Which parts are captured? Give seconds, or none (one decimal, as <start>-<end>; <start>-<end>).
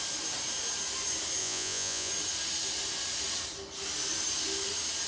0.0-1.4; 2.1-5.1